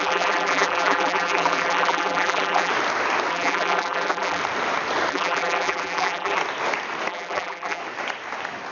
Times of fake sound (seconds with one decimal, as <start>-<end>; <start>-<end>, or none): 0.0-2.7; 3.3-4.4; 5.1-6.4; 7.1-7.8